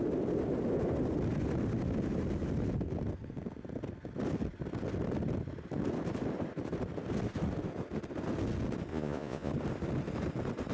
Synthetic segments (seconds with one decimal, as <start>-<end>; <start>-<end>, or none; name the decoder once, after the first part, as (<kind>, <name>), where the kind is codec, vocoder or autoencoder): 8.9-9.5 (vocoder, Vocos)